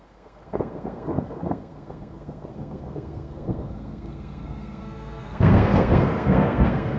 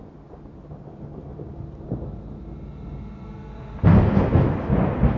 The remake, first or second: first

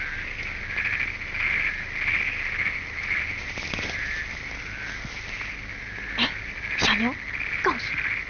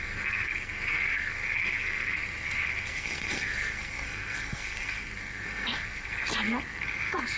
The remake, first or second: second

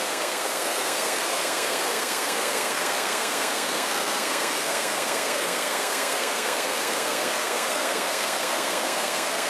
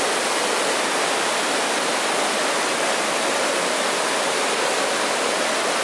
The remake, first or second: first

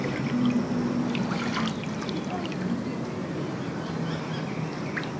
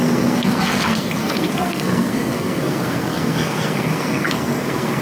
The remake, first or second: second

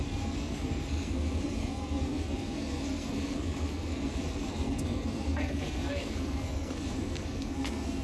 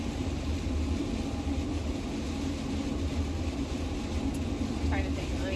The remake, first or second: first